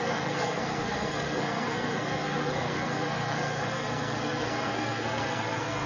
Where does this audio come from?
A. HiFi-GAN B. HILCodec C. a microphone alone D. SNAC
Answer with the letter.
D